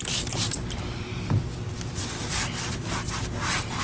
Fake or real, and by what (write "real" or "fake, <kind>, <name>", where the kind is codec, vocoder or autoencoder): real